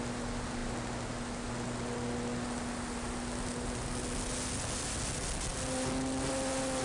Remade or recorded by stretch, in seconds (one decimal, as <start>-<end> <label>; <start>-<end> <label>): 0.0-6.8 recorded